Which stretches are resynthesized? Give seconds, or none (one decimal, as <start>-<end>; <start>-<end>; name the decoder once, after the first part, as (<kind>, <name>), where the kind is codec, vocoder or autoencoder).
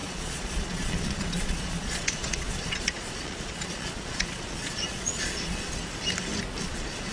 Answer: 0.0-5.8 (vocoder, Vocos); 6.6-7.1